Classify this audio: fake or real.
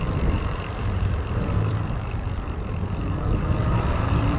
fake